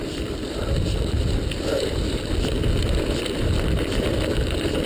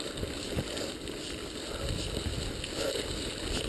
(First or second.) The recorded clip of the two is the second